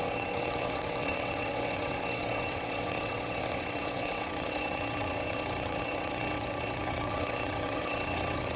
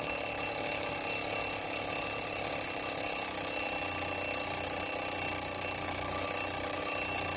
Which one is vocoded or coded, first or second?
first